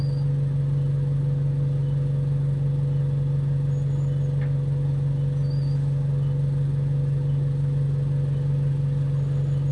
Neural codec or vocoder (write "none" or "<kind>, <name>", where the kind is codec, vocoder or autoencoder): none